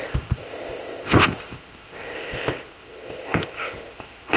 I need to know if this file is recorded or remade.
remade